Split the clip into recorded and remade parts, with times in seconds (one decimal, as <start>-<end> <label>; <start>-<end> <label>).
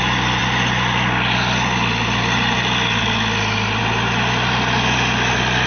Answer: 0.0-5.7 recorded